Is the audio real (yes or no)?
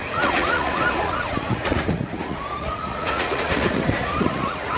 no